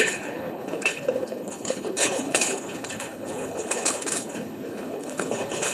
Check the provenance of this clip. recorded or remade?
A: remade